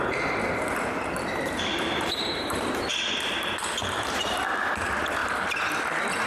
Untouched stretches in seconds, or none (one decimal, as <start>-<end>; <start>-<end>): 0.0-1.7; 2.7-3.8; 4.6-5.2; 5.8-6.3